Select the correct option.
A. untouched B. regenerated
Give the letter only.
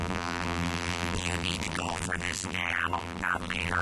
B